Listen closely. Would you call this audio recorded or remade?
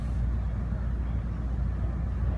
recorded